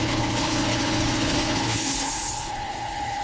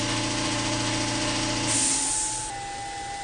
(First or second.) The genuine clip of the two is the second